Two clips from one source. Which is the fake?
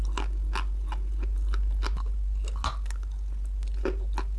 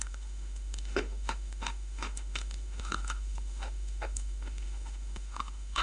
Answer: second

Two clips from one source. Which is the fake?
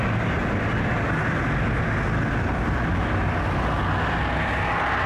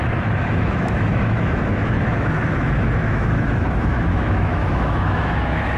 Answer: second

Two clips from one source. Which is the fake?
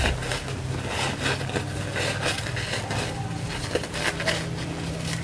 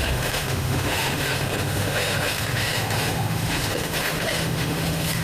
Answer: second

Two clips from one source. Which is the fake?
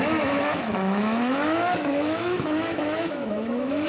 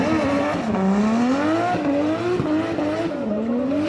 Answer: first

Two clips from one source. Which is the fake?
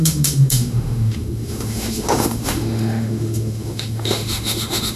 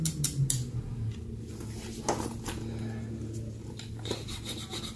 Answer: first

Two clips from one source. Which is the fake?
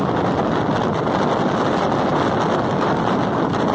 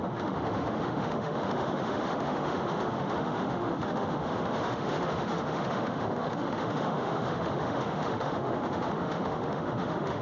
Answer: second